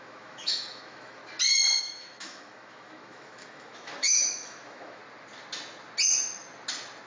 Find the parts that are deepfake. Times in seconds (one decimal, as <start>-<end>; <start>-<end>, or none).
0.0-1.2; 1.8-5.0